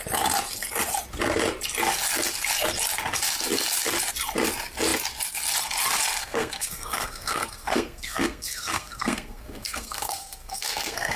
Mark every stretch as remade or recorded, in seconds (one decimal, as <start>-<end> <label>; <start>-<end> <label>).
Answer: 0.0-6.2 recorded; 6.2-11.2 remade